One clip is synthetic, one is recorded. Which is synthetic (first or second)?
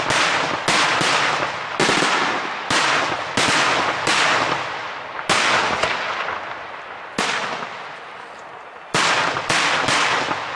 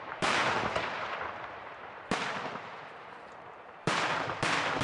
second